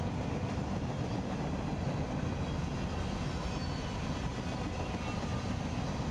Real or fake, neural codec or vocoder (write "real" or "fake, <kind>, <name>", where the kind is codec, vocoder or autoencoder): real